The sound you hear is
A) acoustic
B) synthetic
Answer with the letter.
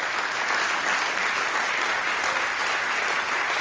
A